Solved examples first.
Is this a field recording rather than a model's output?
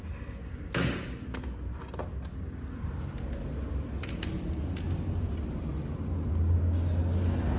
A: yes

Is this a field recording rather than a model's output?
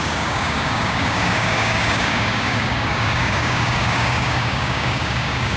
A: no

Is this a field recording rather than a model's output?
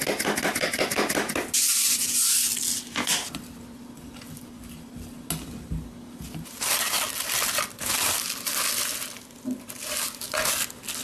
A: yes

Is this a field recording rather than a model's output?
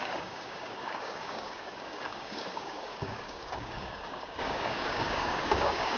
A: no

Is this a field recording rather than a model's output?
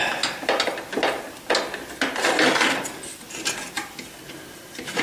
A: yes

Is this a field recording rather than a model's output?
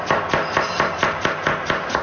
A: yes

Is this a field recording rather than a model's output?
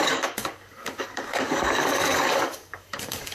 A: no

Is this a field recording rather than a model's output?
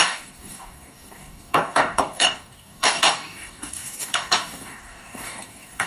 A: no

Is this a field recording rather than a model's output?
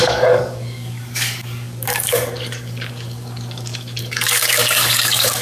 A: no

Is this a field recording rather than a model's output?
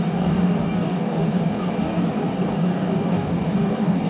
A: no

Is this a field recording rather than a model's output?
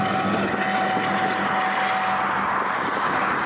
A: yes